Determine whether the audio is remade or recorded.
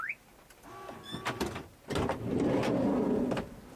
recorded